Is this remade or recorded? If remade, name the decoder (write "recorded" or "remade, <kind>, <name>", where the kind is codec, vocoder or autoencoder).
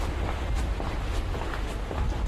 recorded